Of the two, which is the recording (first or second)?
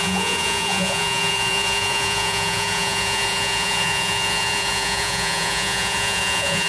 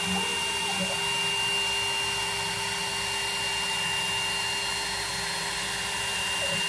second